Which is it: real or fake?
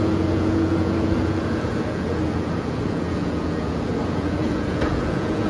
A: fake